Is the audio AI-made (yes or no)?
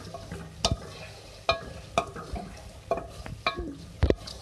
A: no